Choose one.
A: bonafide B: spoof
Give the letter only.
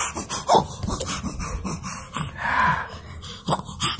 A